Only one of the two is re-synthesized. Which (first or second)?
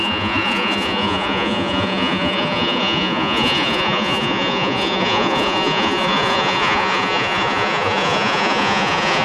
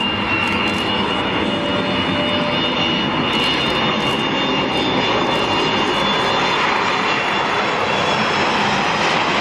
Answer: first